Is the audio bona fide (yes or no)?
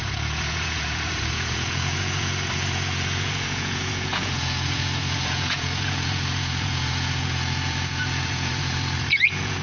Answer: no